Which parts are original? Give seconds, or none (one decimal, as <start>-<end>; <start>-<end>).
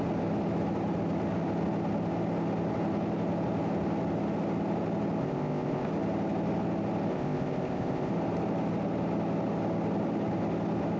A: 0.0-5.2; 5.9-7.1; 8.1-11.0